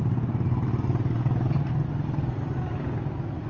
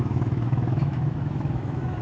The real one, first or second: first